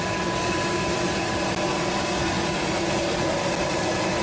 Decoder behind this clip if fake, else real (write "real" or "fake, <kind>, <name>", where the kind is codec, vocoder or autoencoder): real